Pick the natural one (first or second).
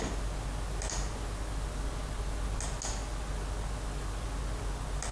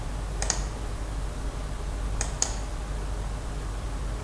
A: first